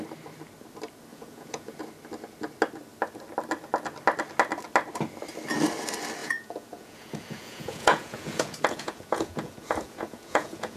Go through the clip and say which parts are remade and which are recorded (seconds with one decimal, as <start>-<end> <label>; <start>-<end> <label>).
0.0-1.1 recorded; 1.1-1.8 remade; 1.8-6.2 recorded; 6.2-10.8 remade